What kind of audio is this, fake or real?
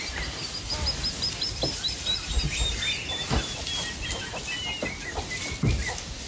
real